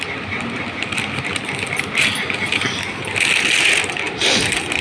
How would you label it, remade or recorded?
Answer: recorded